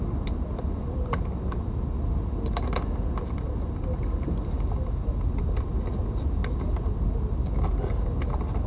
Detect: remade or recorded recorded